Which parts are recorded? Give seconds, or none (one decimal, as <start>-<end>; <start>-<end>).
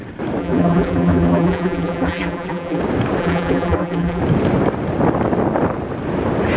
0.0-0.4; 2.8-3.2; 4.2-6.6